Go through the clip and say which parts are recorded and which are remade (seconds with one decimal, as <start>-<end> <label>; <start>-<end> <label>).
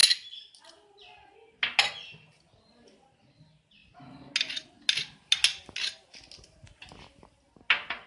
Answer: 0.0-8.1 recorded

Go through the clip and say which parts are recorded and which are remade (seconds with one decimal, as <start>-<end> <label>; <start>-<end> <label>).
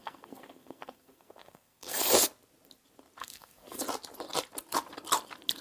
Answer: 0.0-2.0 remade; 2.0-3.2 recorded; 3.2-3.8 remade; 3.8-5.6 recorded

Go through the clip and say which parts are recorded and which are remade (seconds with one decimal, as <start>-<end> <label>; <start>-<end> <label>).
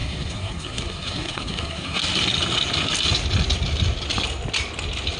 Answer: 0.0-2.0 remade; 2.0-5.2 recorded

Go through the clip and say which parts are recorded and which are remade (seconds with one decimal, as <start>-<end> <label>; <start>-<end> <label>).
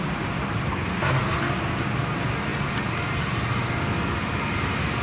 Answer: 0.0-0.7 recorded; 0.7-1.5 remade; 1.5-5.0 recorded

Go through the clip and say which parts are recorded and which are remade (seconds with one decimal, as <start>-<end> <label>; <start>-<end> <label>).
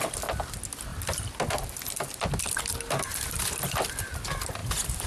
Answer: 0.0-5.1 recorded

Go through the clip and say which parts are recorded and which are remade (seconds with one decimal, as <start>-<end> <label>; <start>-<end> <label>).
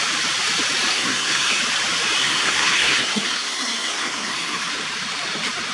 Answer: 0.0-0.9 recorded; 0.9-1.6 remade; 1.6-2.2 recorded; 2.2-4.7 remade; 4.7-5.7 recorded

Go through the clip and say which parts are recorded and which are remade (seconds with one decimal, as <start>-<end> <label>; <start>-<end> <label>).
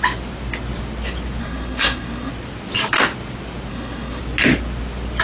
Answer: 0.0-1.4 recorded; 1.4-2.3 remade; 2.3-3.7 recorded; 3.7-4.2 remade; 4.2-5.2 recorded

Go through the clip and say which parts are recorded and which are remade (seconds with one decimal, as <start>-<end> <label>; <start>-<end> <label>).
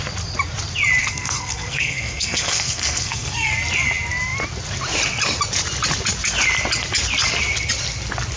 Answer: 0.0-1.0 recorded; 1.0-3.5 remade; 3.5-8.4 recorded